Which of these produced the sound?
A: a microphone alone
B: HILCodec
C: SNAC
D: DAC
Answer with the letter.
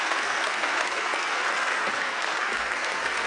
C